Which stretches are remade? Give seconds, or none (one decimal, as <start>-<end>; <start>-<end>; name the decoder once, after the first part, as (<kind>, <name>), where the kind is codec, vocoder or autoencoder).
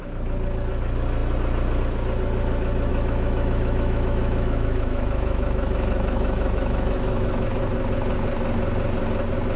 2.9-7.6 (autoencoder, DAC-VAE)